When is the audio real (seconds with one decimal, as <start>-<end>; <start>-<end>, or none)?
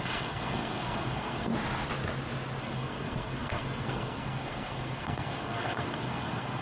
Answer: 1.5-2.6